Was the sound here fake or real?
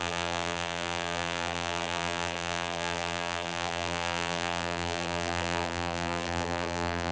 fake